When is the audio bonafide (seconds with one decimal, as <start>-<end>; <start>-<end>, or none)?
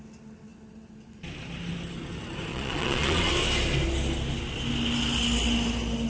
0.0-2.5; 3.3-6.1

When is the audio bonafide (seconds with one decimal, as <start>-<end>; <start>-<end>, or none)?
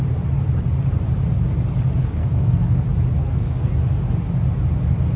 0.0-2.0; 2.8-3.2; 3.7-5.2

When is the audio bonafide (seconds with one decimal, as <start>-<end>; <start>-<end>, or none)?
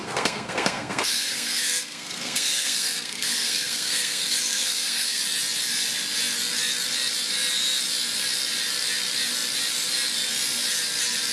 5.2-11.3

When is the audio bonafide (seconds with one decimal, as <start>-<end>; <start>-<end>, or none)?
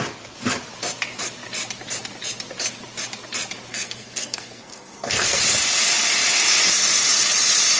0.0-3.7; 5.4-7.8